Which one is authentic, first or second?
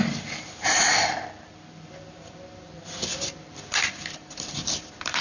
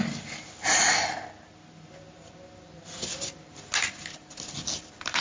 second